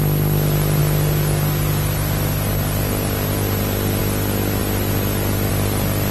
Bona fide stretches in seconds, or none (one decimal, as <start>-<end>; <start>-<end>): 0.0-6.1